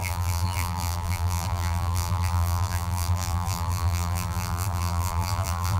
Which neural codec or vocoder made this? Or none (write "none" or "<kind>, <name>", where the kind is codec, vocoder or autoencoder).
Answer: vocoder, BigVGAN v2